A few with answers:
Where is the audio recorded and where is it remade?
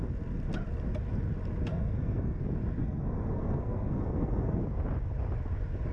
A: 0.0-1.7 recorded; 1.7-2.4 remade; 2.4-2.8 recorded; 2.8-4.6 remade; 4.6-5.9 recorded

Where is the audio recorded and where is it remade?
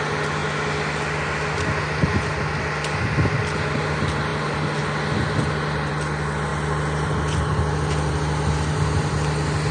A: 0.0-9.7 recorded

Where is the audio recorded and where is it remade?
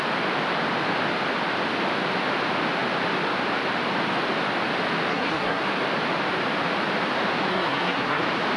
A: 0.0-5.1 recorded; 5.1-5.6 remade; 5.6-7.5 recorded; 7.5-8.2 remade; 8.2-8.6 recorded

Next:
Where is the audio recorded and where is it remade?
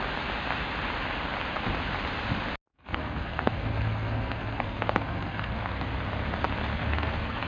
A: 0.0-2.7 recorded; 2.7-5.9 remade; 5.9-6.7 recorded; 6.7-7.5 remade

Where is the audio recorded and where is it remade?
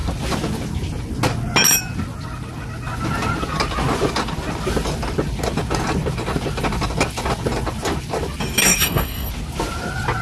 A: 0.0-8.6 recorded; 8.6-9.3 remade; 9.3-10.2 recorded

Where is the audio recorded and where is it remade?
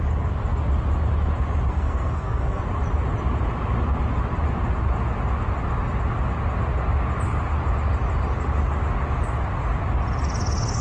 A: 0.0-1.7 recorded; 1.7-2.6 remade; 2.6-10.8 recorded